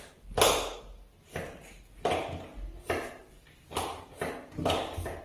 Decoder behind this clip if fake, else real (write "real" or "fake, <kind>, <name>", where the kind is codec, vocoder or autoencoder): real